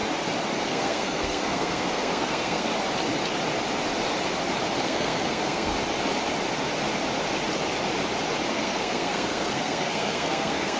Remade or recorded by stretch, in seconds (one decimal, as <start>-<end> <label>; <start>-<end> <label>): 0.0-0.6 recorded; 0.6-2.7 remade; 2.7-4.8 recorded; 4.8-5.7 remade; 5.7-8.5 recorded; 8.5-10.8 remade